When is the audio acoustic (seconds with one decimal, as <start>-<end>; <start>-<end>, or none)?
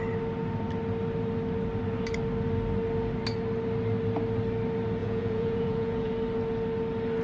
0.0-5.0; 6.1-7.2